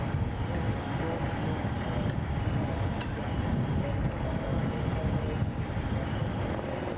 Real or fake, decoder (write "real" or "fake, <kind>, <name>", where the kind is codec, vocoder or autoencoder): real